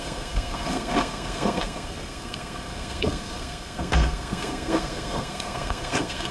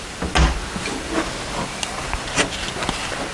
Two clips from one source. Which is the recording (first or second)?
second